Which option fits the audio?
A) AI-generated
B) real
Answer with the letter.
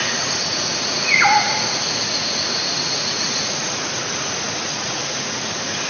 A